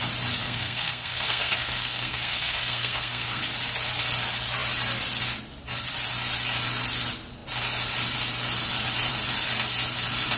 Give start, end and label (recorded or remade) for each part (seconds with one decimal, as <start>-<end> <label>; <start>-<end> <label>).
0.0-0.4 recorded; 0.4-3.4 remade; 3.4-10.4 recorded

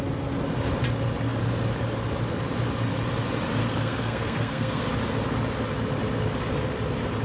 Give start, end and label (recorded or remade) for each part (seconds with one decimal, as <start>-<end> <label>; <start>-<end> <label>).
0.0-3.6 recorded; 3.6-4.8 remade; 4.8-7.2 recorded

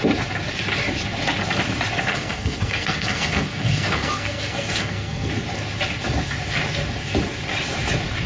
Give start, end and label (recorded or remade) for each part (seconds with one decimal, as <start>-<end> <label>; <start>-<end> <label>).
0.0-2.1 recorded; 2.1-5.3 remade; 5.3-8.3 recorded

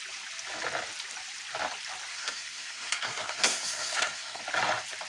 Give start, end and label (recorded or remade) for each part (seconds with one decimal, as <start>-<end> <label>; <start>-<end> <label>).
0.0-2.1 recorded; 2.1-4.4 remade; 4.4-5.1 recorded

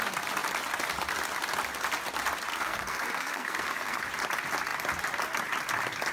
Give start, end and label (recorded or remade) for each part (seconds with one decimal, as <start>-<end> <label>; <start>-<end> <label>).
0.0-2.5 recorded; 2.5-4.1 remade; 4.1-6.1 recorded

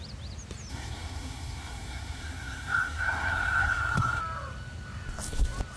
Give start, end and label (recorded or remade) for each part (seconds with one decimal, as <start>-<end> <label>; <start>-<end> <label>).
0.0-0.7 recorded; 0.7-4.2 remade; 4.2-5.8 recorded

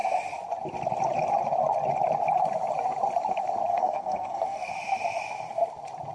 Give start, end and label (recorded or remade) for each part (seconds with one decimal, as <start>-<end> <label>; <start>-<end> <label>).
0.0-3.7 recorded; 3.7-4.7 remade; 4.7-6.1 recorded

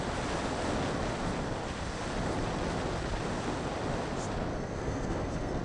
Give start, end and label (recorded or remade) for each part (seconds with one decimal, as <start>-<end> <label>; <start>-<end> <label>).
0.0-4.5 recorded; 4.5-5.6 remade